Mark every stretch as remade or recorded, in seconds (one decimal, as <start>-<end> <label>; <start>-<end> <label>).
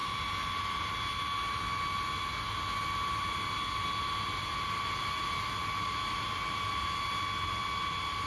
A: 0.0-8.3 recorded